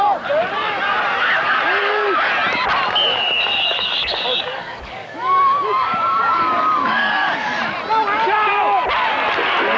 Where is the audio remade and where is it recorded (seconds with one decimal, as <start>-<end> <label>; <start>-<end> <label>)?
0.0-1.8 recorded; 1.8-2.3 remade; 2.3-3.1 recorded; 3.1-7.6 remade; 7.6-9.8 recorded